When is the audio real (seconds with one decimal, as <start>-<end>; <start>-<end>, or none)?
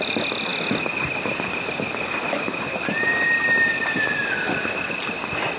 0.0-5.6